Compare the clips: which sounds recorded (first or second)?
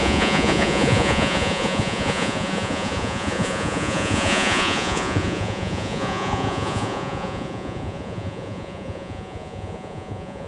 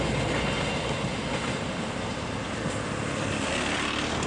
second